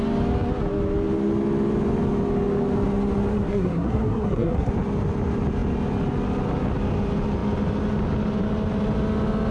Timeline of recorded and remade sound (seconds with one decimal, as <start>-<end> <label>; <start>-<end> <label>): 0.0-3.3 recorded; 3.3-4.7 remade; 4.7-9.5 recorded